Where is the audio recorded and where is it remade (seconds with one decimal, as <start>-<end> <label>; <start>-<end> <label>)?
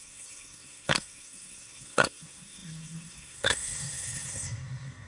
0.0-5.1 remade